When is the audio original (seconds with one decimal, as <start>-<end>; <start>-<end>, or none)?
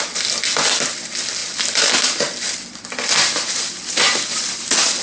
0.0-5.0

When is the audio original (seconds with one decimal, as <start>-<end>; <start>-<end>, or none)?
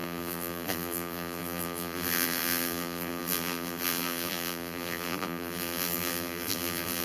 none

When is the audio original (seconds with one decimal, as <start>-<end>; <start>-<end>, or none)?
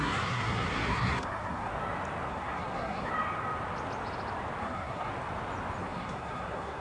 1.7-2.3; 3.1-4.6; 5.1-5.8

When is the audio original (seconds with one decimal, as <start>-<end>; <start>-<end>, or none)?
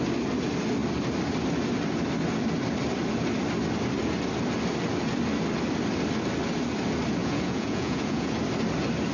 0.0-7.2; 8.3-9.1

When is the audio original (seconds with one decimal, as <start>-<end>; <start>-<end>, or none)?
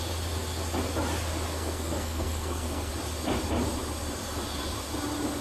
0.0-1.5; 2.9-5.4